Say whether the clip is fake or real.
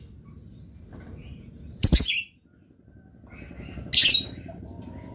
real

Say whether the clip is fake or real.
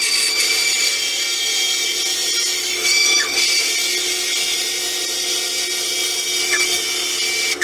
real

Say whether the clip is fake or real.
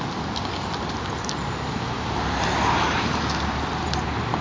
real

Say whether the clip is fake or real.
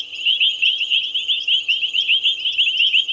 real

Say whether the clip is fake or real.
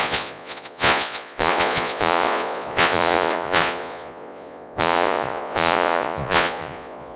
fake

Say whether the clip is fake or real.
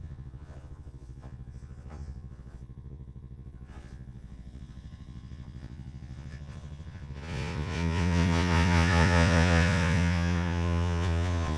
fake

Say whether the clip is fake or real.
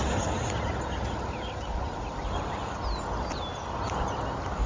real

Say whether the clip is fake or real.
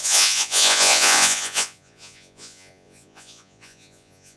fake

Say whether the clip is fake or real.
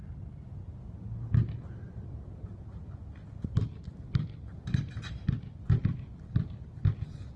real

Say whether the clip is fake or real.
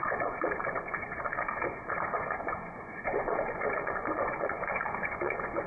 fake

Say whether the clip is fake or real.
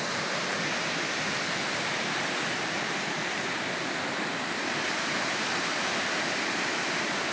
real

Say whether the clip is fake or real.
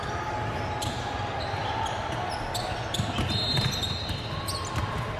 real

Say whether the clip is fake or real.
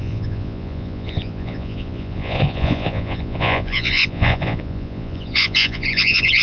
fake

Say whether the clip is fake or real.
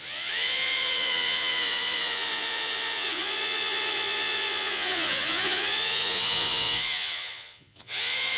fake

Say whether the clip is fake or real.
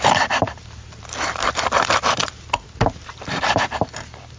real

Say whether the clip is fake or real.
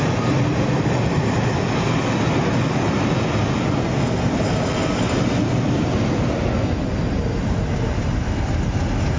real